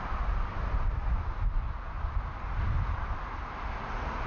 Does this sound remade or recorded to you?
recorded